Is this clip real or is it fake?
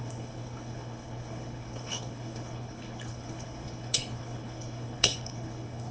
fake